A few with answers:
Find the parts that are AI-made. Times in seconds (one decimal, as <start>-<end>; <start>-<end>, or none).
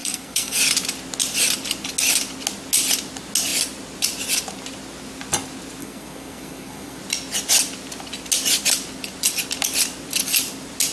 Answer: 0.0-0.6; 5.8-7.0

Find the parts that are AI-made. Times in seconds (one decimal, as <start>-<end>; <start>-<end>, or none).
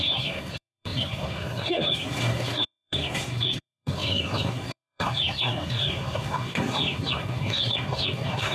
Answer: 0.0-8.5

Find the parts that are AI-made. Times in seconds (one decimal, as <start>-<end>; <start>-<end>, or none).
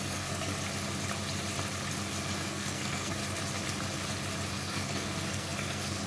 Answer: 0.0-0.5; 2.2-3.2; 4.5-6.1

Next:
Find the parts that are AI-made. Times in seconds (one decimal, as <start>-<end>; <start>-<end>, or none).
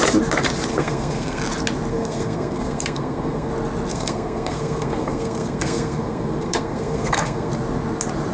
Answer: 0.7-1.4; 1.9-3.5; 3.9-7.5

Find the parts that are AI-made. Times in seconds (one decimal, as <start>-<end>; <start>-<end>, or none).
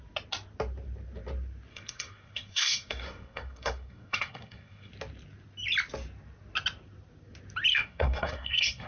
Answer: 1.7-4.9; 7.7-8.9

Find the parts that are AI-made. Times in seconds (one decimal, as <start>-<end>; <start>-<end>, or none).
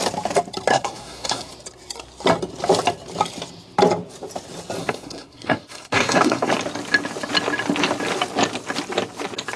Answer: 0.7-1.5; 4.8-6.5